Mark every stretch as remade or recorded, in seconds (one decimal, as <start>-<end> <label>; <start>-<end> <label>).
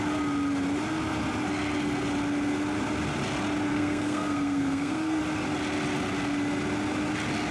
0.0-3.7 recorded; 3.7-5.2 remade; 5.2-7.5 recorded